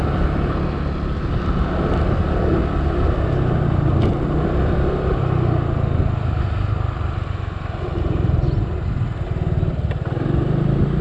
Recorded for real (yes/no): yes